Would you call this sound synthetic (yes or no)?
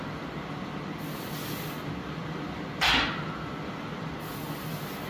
no